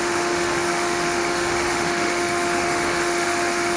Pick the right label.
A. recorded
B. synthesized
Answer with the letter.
B